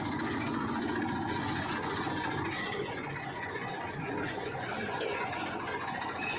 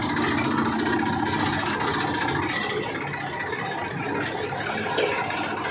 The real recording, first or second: second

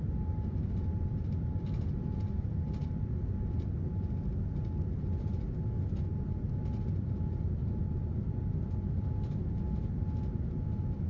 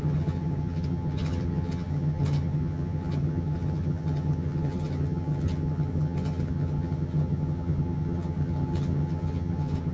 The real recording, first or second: first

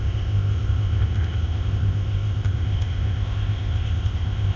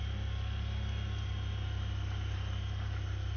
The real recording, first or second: second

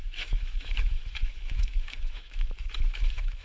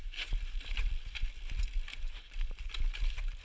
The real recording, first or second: second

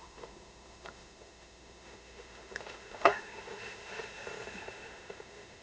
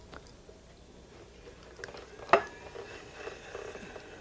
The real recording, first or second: second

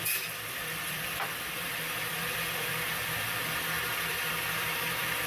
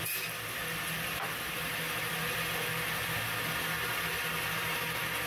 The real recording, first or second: second